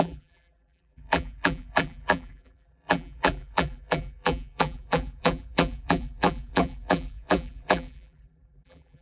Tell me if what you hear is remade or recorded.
remade